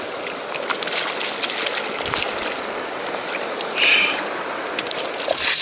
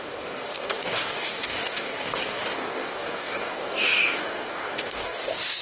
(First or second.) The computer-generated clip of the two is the second